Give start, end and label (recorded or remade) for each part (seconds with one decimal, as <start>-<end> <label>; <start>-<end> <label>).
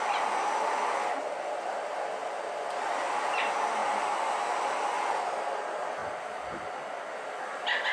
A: 0.0-7.9 recorded